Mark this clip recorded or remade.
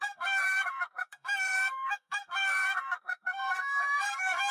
remade